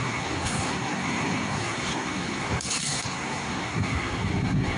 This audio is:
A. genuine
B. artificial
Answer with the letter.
B